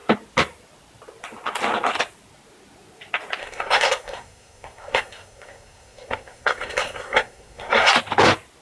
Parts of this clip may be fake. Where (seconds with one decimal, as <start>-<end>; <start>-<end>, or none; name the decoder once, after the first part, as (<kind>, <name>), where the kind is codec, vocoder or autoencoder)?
3.4-7.9 (codec, SNAC)